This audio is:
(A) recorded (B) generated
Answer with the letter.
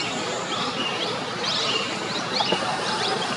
B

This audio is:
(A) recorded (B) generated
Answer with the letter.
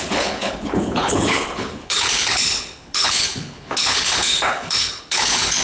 B